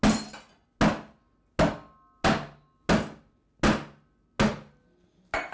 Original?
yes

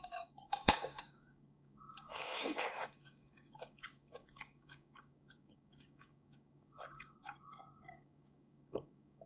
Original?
no